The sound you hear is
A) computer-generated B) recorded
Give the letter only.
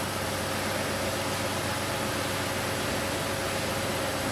B